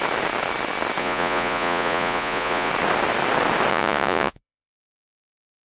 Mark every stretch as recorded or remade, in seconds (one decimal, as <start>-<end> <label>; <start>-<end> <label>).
0.0-1.0 recorded; 1.0-2.7 remade; 2.7-3.7 recorded; 3.7-4.7 remade; 4.7-5.7 recorded

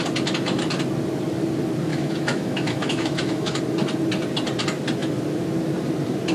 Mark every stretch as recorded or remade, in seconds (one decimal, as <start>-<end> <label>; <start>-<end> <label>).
0.0-1.9 recorded; 1.9-3.6 remade; 3.6-6.3 recorded

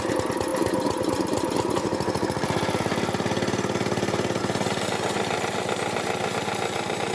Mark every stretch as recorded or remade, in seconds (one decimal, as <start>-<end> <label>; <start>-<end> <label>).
0.0-7.1 recorded

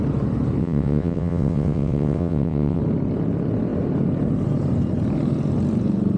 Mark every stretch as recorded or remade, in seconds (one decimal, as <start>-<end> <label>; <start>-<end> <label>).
0.0-0.6 recorded; 0.6-2.8 remade; 2.8-6.2 recorded

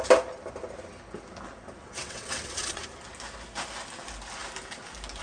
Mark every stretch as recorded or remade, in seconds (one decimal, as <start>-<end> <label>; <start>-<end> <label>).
0.0-1.8 recorded; 1.8-2.8 remade; 2.8-5.2 recorded